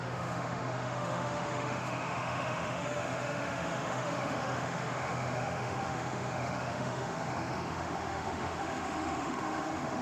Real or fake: fake